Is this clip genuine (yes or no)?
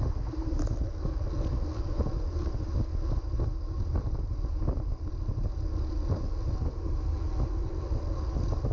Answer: yes